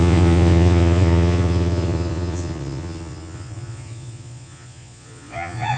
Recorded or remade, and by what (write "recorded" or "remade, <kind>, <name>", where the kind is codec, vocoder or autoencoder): remade, vocoder, Vocos